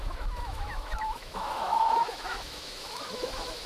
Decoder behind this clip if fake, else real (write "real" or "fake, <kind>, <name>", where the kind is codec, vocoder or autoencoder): fake, autoencoder, DAC-VAE